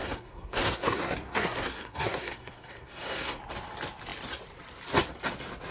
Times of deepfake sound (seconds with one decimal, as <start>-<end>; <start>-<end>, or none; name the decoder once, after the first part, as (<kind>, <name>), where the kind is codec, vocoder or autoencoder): 0.0-3.4 (codec, SNAC)